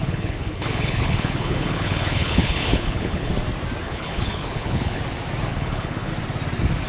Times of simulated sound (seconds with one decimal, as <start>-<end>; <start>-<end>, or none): 0.0-3.3; 3.8-5.0; 5.5-6.1